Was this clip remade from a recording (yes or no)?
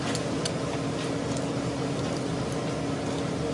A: no